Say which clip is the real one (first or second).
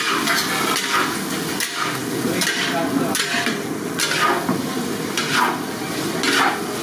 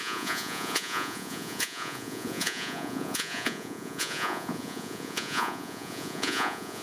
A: first